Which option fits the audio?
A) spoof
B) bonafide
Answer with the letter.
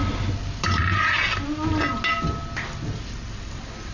B